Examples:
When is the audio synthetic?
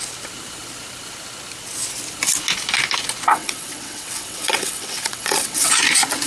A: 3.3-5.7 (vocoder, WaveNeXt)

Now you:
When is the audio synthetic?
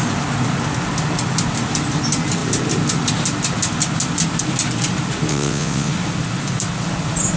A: 5.3-5.9 (vocoder, WaveNeXt)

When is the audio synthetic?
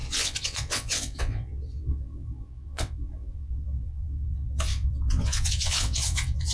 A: 0.0-6.5 (vocoder, WaveNeXt)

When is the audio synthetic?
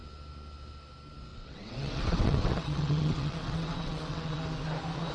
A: 1.3-4.4 (vocoder, WaveNeXt)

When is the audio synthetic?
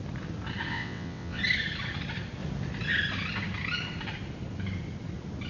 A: 0.7-1.4 (vocoder, WaveNeXt)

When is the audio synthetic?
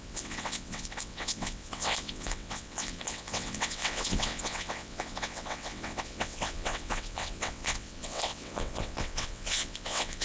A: 0.0-10.2 (vocoder, WaveNeXt)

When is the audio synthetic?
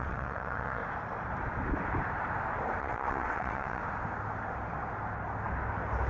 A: 0.0-0.8 (vocoder, WaveNeXt); 2.8-3.8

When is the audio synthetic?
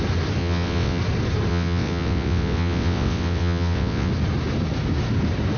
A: 0.4-1.0 (vocoder, WaveNeXt); 1.5-4.1